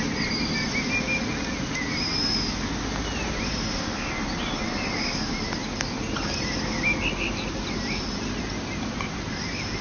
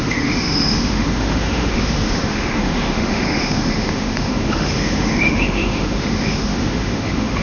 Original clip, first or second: first